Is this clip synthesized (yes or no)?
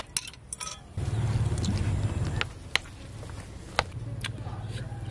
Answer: no